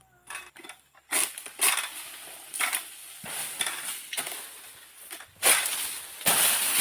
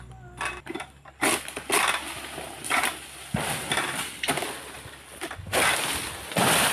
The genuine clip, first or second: first